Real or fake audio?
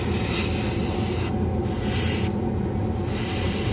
real